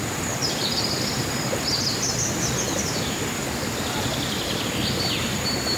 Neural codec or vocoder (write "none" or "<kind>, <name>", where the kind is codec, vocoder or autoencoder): none